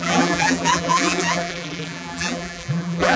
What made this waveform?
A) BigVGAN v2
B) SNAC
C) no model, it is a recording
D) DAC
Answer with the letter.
A